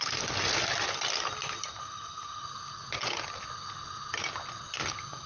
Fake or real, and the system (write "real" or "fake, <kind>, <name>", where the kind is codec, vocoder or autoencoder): real